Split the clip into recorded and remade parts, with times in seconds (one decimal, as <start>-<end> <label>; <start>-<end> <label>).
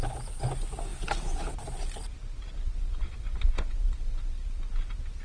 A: 0.0-5.2 recorded